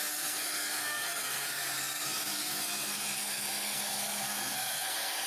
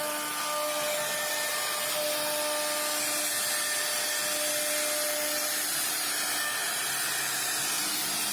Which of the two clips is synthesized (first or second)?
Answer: first